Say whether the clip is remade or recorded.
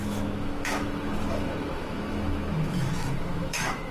remade